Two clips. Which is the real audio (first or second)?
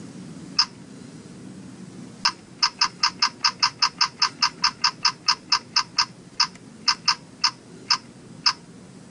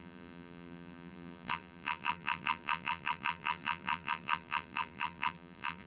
first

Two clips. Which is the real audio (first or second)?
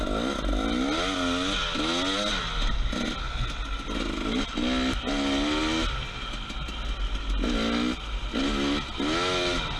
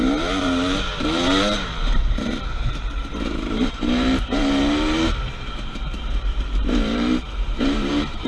first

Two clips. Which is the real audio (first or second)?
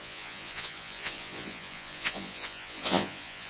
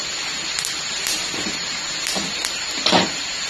second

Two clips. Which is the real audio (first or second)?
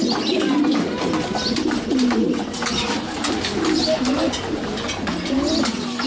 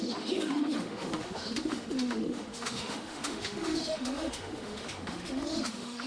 first